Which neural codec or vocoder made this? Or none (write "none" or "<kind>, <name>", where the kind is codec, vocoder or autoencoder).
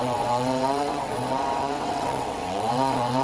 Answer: vocoder, WaveNeXt